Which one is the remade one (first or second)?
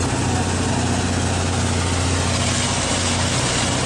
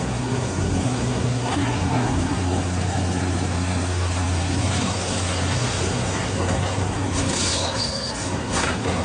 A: second